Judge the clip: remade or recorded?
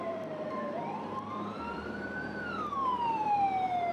remade